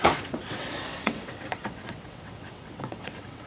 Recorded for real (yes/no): no